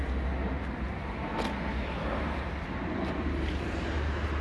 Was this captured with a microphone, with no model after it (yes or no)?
yes